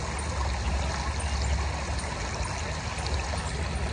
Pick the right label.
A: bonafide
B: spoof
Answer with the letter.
A